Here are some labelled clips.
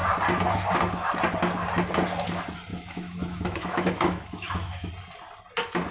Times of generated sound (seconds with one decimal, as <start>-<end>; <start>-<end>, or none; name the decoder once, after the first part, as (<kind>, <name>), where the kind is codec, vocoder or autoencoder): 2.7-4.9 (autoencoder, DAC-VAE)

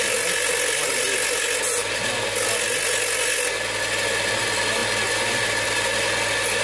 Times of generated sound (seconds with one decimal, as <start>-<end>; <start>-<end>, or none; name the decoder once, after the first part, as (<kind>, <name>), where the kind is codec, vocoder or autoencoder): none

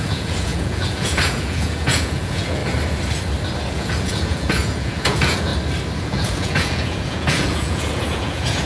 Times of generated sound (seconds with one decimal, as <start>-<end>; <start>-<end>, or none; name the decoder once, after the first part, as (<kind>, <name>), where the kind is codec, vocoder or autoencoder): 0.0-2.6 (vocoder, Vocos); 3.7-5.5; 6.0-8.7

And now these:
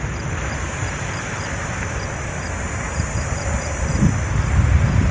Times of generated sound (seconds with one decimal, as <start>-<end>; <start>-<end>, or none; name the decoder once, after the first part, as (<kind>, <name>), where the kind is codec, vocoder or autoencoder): none

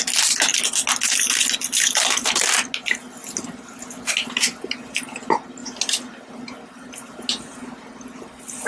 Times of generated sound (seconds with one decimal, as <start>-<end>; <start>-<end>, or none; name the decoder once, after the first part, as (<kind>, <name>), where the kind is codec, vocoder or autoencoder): none